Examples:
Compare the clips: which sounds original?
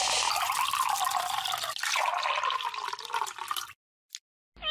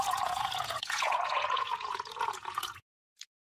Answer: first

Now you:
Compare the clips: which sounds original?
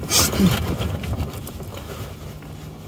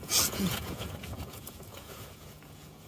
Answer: first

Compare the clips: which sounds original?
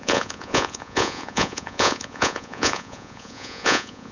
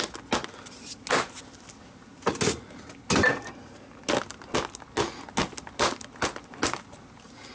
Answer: second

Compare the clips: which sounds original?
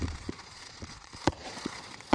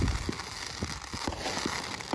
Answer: second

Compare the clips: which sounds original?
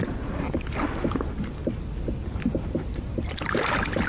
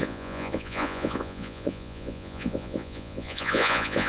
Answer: first